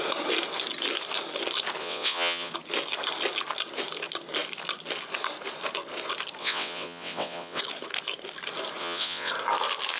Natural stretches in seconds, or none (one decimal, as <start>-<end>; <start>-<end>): 0.0-1.8; 2.5-6.4; 7.6-8.8; 9.3-10.0